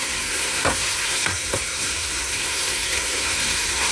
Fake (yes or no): yes